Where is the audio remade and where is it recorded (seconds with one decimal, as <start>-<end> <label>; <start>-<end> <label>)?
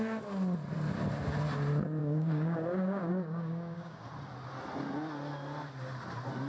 0.0-2.0 recorded; 2.0-4.0 remade; 4.0-6.5 recorded